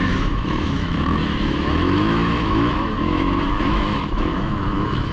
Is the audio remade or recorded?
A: remade